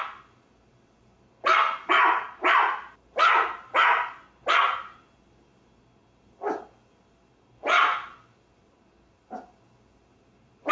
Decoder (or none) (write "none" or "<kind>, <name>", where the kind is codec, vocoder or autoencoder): none